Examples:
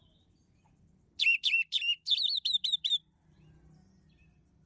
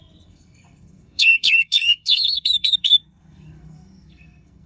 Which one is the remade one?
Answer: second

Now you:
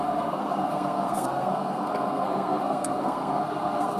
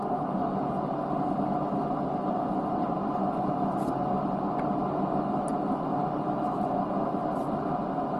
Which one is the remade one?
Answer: first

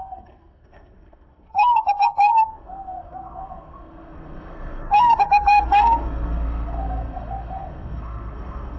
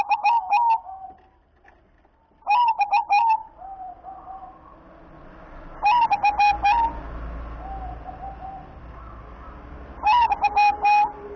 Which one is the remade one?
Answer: first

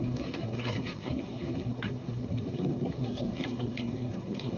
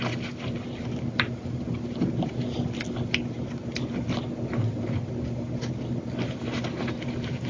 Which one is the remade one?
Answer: first